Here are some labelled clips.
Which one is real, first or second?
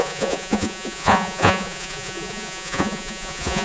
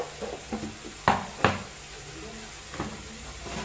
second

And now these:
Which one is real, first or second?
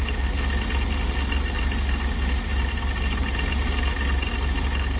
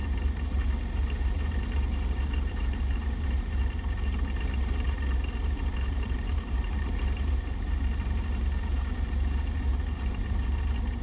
first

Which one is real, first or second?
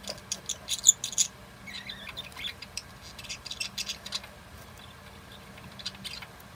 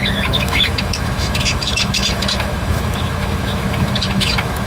first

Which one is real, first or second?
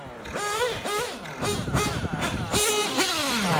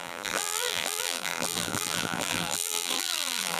first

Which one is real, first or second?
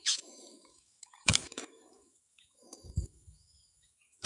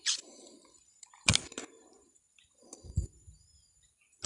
second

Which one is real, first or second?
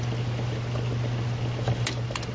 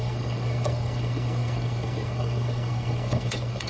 first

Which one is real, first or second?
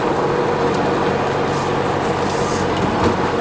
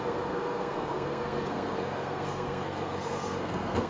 first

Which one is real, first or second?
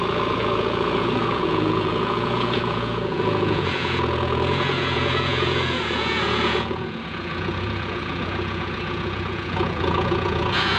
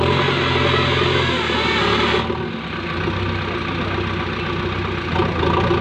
second